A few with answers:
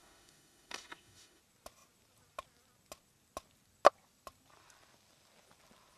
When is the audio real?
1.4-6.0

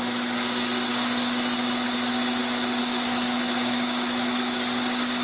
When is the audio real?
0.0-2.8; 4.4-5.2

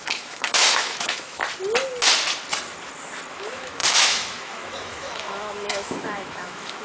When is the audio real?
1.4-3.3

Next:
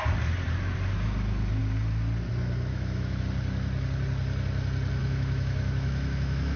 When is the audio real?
0.0-2.7; 3.2-5.0

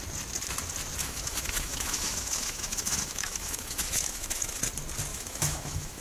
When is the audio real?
0.0-1.0; 4.6-5.1